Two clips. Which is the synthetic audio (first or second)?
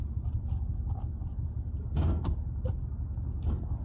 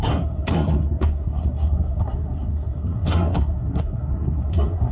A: second